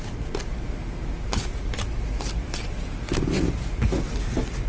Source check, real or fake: real